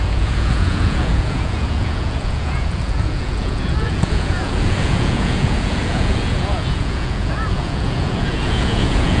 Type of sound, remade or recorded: remade